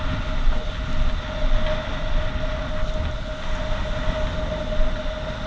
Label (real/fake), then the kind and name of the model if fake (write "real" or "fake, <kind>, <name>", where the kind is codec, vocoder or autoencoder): real